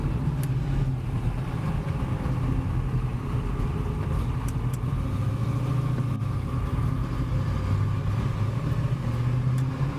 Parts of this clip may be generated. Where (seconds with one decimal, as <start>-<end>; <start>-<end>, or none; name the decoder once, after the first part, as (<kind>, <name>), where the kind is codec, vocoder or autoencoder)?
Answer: none